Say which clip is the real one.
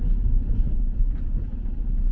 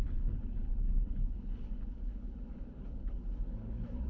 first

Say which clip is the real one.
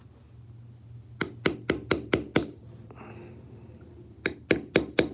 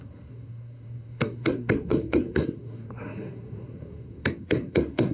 first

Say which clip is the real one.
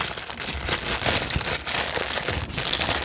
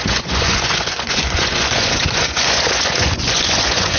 first